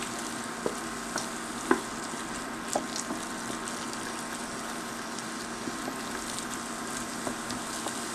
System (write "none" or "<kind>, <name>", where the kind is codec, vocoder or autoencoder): none